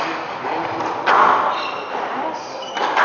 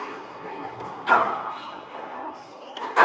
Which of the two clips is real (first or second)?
first